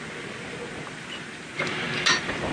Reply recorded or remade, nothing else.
recorded